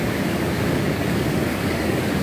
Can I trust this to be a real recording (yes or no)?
no